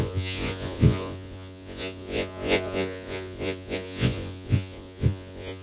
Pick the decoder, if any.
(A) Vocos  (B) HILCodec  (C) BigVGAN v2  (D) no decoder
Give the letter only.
A